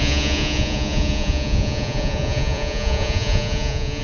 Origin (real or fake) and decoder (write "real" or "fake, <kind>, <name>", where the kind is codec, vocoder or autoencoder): fake, vocoder, Vocos